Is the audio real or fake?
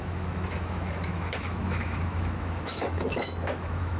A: fake